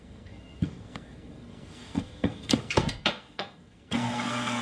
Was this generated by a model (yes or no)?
yes